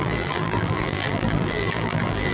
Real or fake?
fake